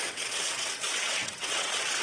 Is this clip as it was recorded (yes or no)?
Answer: no